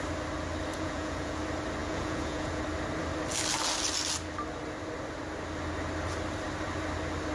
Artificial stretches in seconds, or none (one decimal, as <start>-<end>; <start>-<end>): 0.7-1.4; 1.8-2.6